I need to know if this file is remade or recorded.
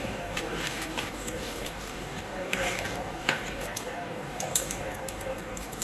remade